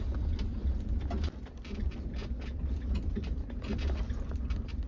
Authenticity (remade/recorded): recorded